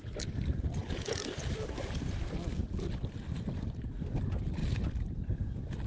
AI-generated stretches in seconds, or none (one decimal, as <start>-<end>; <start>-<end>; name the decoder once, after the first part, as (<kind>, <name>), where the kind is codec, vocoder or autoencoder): 0.8-2.1 (vocoder, BigVGAN v2); 4.6-5.9